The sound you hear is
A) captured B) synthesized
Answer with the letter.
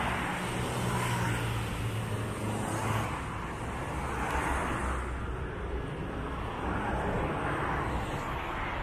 A